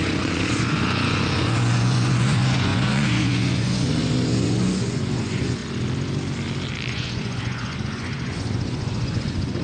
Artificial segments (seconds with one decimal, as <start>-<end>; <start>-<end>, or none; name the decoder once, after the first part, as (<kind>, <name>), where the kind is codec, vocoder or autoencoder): 0.0-5.6 (vocoder, Vocos); 6.9-9.6